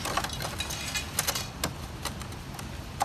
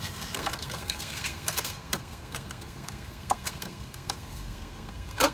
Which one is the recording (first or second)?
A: first